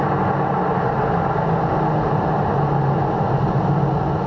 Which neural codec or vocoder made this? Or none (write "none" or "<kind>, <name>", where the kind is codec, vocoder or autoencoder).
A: none